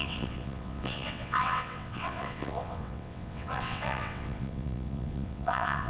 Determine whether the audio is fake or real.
fake